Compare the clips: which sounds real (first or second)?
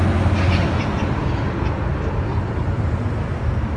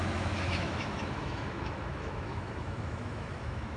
first